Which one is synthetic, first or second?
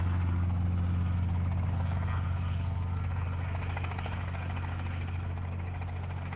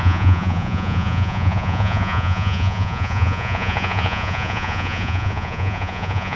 second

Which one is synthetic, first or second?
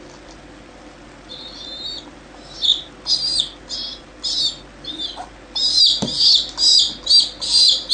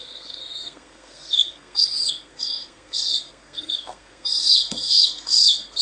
second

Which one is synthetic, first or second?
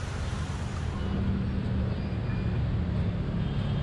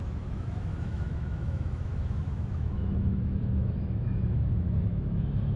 second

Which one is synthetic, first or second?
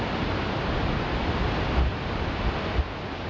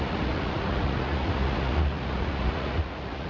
second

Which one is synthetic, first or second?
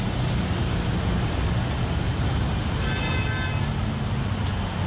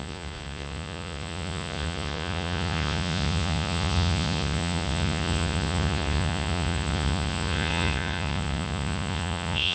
second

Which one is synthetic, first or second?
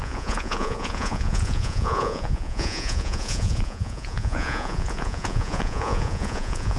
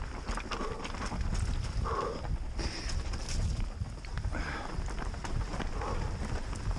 first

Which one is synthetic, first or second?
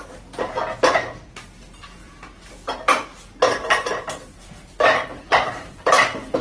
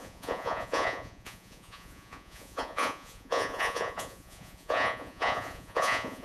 second